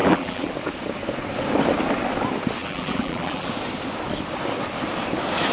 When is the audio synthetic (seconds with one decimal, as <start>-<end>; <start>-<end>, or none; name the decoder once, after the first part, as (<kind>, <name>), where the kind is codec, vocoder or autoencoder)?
0.0-0.5 (vocoder, BigVGAN v2); 2.6-3.5